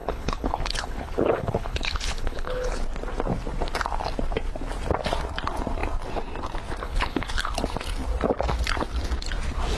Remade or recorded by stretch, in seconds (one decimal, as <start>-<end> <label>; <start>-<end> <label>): 0.0-2.8 remade; 2.8-6.8 recorded; 6.8-7.5 remade; 7.5-9.8 recorded

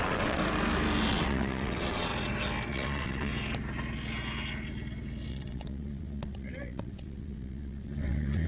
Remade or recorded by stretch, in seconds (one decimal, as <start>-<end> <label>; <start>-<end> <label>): 0.0-0.4 remade; 0.4-1.1 recorded; 1.1-2.1 remade; 2.1-2.7 recorded; 2.7-3.3 remade; 3.3-5.3 recorded; 5.3-8.5 remade

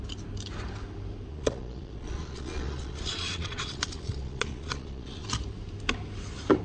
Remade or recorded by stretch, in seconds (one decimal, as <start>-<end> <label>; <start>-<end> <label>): 0.0-1.3 recorded; 1.3-5.3 remade; 5.3-6.6 recorded

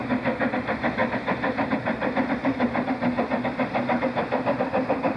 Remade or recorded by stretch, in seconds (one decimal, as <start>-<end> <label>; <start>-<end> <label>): 0.0-0.5 remade; 0.5-1.0 recorded; 1.0-3.2 remade; 3.2-5.2 recorded

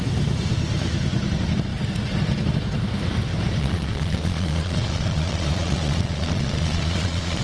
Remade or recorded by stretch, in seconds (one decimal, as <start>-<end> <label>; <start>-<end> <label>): 0.0-3.6 recorded; 3.6-7.4 remade

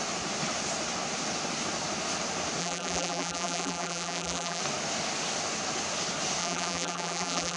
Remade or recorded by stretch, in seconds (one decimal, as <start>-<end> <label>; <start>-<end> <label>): 0.0-2.6 recorded; 2.6-4.6 remade; 4.6-6.4 recorded; 6.4-7.6 remade

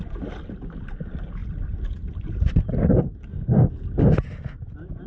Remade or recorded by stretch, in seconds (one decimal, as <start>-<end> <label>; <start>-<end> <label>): 0.0-5.1 recorded

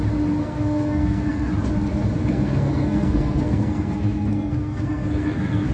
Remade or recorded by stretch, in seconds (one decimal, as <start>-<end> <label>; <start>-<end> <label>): 0.0-0.4 recorded; 0.4-1.5 remade; 1.5-2.2 recorded; 2.2-5.7 remade